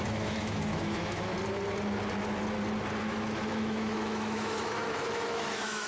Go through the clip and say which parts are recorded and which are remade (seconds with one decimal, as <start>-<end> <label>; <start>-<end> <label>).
0.0-1.3 remade; 1.3-3.0 recorded; 3.0-5.9 remade